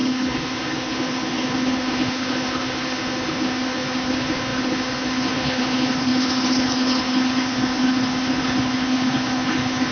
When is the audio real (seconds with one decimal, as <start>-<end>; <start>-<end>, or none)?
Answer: none